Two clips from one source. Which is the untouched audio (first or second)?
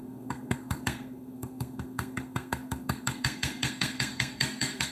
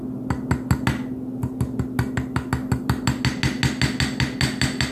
second